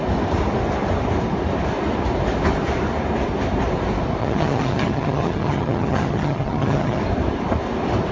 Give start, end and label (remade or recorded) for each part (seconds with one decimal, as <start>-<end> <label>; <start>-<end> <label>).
0.0-4.2 recorded; 4.2-7.0 remade; 7.0-8.1 recorded